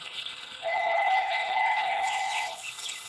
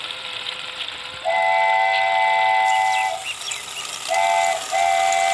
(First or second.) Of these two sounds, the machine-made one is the first